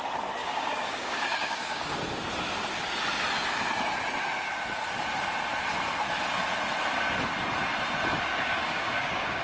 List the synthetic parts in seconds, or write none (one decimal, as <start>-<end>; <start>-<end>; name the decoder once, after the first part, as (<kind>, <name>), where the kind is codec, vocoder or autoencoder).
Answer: 0.4-2.0 (codec, DAC); 8.3-9.4